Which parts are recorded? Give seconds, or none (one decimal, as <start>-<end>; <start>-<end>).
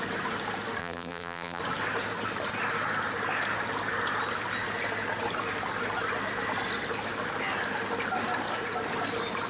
0.0-0.8; 1.6-9.5